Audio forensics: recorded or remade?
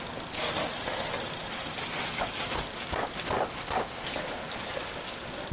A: recorded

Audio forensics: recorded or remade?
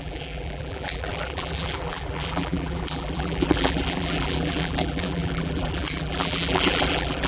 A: remade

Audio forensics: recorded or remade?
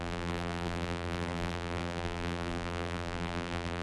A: remade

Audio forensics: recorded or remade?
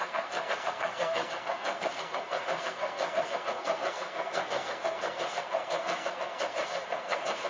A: remade